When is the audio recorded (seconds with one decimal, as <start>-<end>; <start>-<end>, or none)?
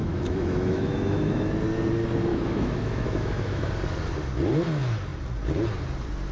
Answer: 1.5-2.3; 3.6-6.3